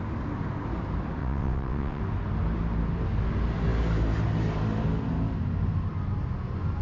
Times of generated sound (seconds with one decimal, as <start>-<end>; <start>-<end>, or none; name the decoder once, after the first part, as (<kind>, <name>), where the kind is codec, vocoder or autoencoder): 1.2-2.0 (vocoder, WaveNeXt)